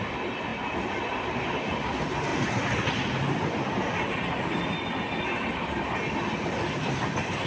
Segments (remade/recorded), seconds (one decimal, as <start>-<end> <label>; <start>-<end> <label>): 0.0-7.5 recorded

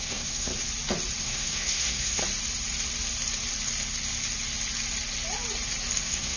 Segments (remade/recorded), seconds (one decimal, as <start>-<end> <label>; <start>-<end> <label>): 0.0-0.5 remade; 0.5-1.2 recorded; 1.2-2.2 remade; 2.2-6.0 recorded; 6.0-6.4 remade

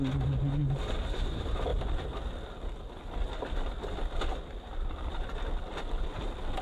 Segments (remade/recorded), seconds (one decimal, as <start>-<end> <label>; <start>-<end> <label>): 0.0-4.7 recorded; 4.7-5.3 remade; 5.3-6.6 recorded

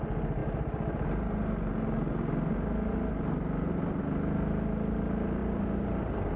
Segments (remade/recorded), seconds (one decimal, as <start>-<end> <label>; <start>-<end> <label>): 0.0-6.4 recorded

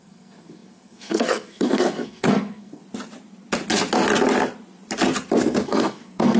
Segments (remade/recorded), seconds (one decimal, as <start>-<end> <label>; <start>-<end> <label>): 0.0-2.8 remade; 2.8-5.4 recorded; 5.4-6.4 remade

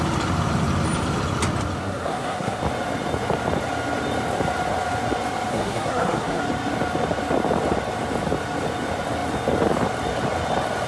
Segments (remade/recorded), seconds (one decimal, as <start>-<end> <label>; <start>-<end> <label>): 0.0-1.8 recorded; 1.8-2.6 remade; 2.6-5.5 recorded; 5.5-6.4 remade; 6.4-10.9 recorded

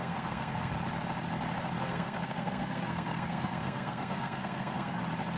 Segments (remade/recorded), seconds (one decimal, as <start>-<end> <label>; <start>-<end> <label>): 0.0-0.7 remade; 0.7-1.8 recorded; 1.8-5.0 remade; 5.0-5.4 recorded

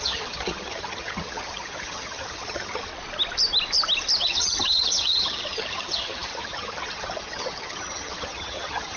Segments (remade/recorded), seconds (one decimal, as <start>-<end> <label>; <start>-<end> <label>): 0.0-2.9 remade; 2.9-4.2 recorded; 4.2-9.0 remade